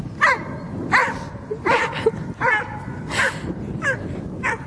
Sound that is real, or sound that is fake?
real